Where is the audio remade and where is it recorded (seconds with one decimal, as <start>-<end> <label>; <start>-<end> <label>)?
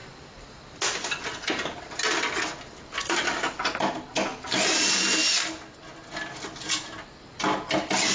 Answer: 0.0-8.1 recorded